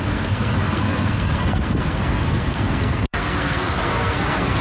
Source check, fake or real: fake